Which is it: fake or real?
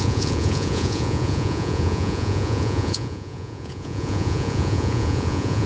fake